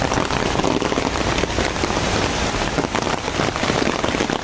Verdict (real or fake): real